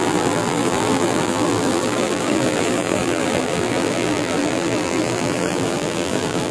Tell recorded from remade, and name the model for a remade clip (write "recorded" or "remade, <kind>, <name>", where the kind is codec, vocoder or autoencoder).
remade, vocoder, BigVGAN v2